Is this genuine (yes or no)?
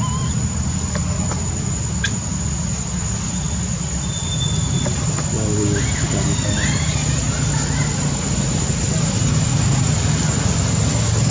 yes